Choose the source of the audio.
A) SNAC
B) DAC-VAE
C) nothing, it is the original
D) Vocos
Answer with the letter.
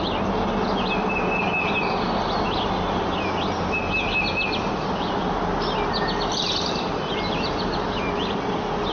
C